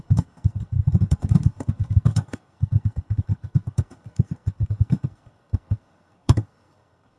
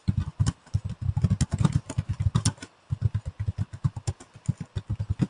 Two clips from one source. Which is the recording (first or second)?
second